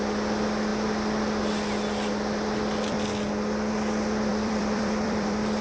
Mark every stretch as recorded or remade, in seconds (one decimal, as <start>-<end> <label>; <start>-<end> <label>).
0.0-4.3 recorded; 4.3-5.6 remade

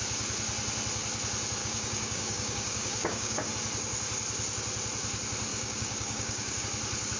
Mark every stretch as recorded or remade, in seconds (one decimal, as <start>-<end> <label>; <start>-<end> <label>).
0.0-1.6 recorded; 1.6-3.5 remade; 3.5-5.5 recorded; 5.5-6.6 remade; 6.6-7.2 recorded

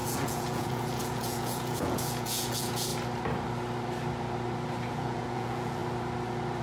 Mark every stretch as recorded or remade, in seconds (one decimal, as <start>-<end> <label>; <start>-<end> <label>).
0.0-2.9 remade; 2.9-4.9 recorded; 4.9-5.8 remade; 5.8-6.6 recorded

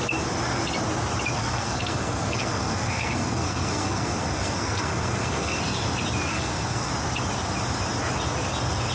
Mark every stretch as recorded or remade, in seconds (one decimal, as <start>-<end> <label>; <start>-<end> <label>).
0.0-1.4 recorded; 1.4-5.6 remade; 5.6-6.3 recorded; 6.3-6.9 remade; 6.9-8.9 recorded

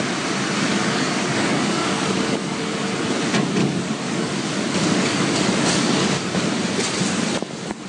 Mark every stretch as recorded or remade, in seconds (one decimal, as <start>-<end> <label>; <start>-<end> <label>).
0.0-0.7 recorded; 0.7-2.6 remade; 2.6-3.6 recorded; 3.6-6.5 remade; 6.5-7.9 recorded

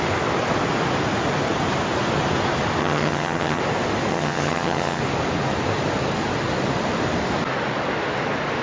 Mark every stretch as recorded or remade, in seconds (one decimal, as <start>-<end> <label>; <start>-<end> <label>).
0.0-2.8 recorded; 2.8-3.6 remade; 3.6-4.1 recorded; 4.1-5.0 remade; 5.0-8.6 recorded

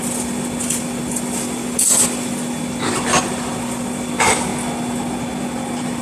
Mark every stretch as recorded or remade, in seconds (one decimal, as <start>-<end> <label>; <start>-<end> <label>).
0.0-1.6 remade; 1.6-2.1 recorded; 2.1-4.5 remade; 4.5-5.4 recorded; 5.4-6.0 remade